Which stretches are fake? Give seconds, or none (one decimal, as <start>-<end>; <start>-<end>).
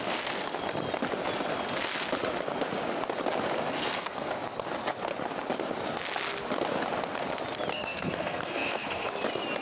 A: 3.8-4.3; 7.7-9.1